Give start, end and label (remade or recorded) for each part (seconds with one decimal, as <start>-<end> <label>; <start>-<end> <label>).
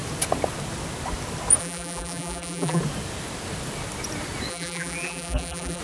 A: 0.0-1.6 recorded; 1.6-2.8 remade; 2.8-4.5 recorded; 4.5-5.8 remade